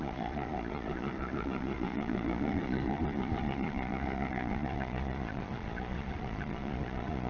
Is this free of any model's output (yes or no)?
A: no